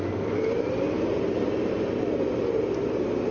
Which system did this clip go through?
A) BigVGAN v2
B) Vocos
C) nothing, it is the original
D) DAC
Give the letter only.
C